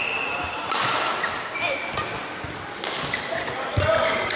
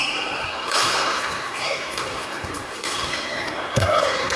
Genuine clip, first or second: first